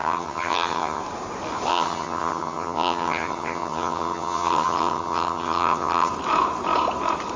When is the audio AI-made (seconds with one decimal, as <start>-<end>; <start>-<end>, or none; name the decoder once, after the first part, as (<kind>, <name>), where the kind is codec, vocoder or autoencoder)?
0.0-1.0 (vocoder, HiFi-GAN); 1.7-6.1